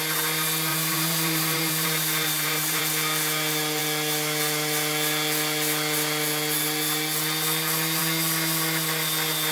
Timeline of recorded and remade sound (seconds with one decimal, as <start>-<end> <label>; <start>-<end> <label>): 0.0-0.7 recorded; 0.7-2.8 remade; 2.8-9.5 recorded